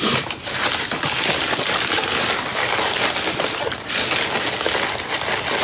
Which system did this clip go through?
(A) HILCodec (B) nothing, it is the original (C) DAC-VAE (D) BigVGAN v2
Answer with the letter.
B